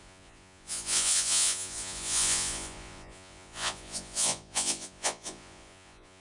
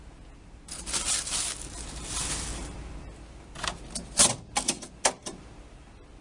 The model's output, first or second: first